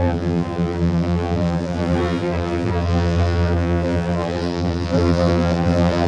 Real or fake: fake